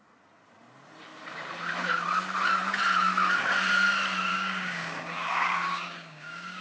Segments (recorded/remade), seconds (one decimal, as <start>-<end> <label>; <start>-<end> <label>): 0.0-4.3 recorded; 4.3-6.6 remade